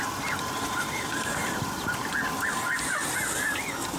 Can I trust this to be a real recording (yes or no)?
yes